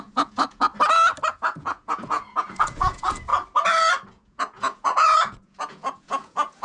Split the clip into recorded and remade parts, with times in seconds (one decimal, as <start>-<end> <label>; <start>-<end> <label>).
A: 0.0-0.7 remade; 0.7-1.3 recorded; 1.3-3.3 remade; 3.3-4.1 recorded; 4.1-6.6 remade